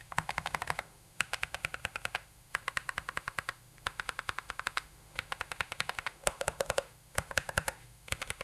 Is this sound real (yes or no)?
no